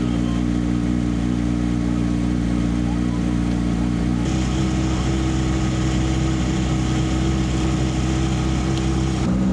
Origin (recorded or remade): recorded